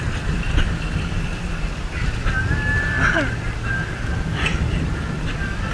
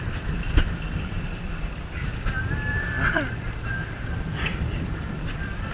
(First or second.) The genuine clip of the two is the first